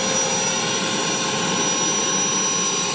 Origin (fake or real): real